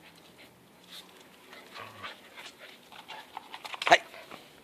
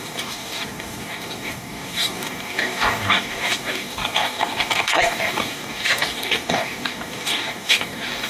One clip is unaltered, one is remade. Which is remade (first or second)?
second